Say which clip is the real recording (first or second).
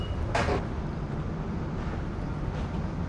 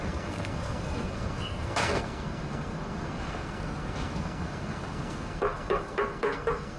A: first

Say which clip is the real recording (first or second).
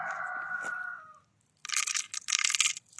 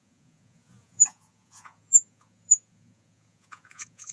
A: first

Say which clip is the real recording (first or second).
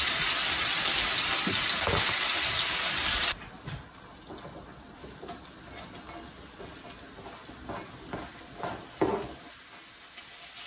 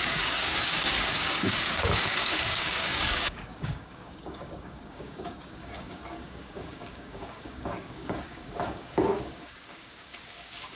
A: first